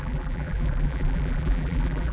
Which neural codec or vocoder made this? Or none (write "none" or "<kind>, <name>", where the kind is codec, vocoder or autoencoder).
vocoder, BigVGAN v2